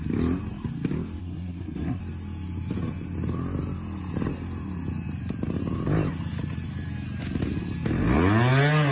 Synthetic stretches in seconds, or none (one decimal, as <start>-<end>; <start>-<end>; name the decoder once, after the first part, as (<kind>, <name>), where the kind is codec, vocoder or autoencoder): 1.2-2.0 (codec, SNAC)